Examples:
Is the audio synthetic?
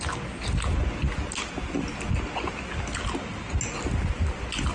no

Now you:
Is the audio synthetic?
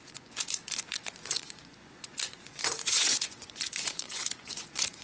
yes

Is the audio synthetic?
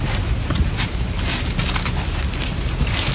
no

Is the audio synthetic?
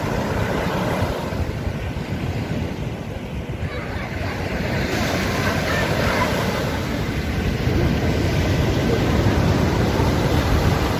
no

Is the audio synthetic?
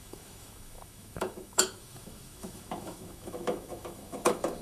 yes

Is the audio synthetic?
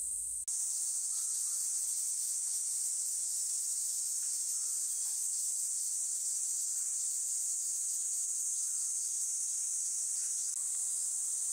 no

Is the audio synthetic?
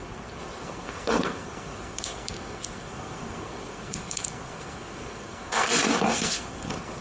yes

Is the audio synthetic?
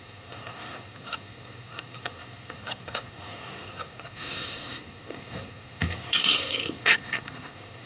yes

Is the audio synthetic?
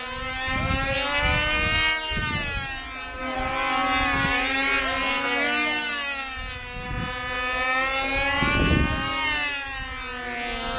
no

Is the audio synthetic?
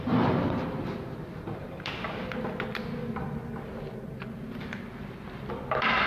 yes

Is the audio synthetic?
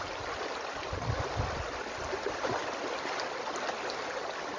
no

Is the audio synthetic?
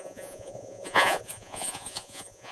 yes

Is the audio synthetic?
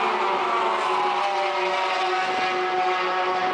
no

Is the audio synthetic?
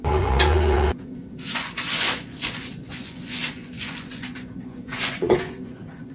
yes